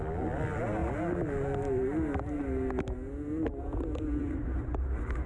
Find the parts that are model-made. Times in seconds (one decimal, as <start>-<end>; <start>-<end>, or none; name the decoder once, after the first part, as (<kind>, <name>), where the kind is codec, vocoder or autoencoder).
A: none